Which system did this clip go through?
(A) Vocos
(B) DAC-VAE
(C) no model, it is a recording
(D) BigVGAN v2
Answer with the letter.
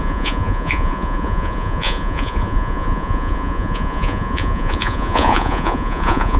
A